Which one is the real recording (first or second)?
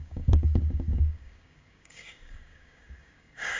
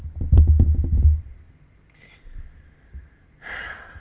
second